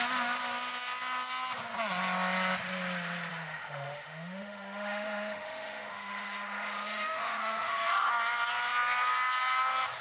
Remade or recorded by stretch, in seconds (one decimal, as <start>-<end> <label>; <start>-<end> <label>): 0.0-3.3 recorded; 3.3-8.1 remade; 8.1-10.0 recorded